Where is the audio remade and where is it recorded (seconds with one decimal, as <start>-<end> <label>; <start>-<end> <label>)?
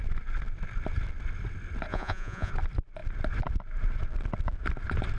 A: 0.0-1.9 recorded; 1.9-2.5 remade; 2.5-5.2 recorded